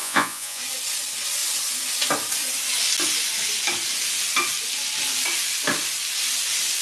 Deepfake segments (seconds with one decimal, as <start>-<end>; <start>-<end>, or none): 0.0-0.6